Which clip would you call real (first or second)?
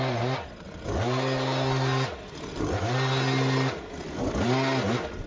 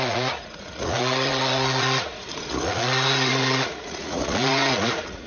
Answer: first